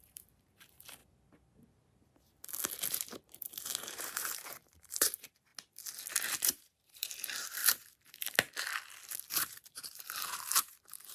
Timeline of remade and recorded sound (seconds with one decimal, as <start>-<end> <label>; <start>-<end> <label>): 0.0-1.0 remade; 1.0-2.9 recorded; 2.9-5.5 remade; 5.5-6.4 recorded; 6.4-7.6 remade; 7.6-9.3 recorded; 9.3-11.1 remade